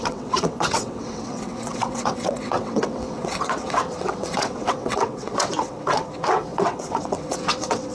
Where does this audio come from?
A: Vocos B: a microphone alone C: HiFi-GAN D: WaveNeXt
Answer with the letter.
D